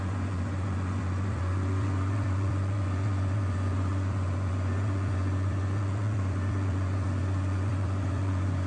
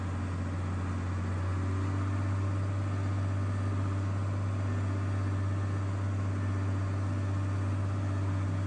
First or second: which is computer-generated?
first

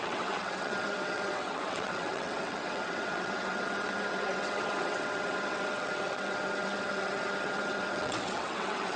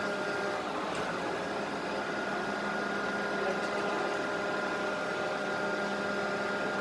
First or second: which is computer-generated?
first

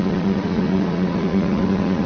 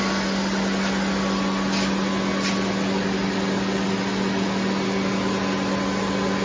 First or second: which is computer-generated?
first